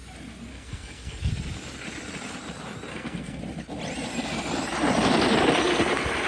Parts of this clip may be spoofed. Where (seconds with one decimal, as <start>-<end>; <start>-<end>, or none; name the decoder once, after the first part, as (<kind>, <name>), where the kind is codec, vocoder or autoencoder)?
0.5-1.3 (codec, SNAC); 2.9-3.4